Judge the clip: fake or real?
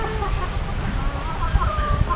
real